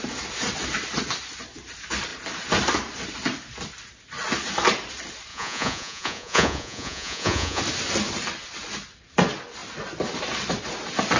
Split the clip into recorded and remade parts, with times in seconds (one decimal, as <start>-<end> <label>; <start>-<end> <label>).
0.0-5.3 recorded; 5.3-7.6 remade; 7.6-11.2 recorded